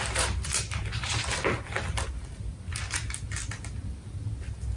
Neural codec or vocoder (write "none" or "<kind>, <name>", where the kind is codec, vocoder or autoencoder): none